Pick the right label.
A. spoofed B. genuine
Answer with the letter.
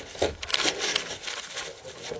B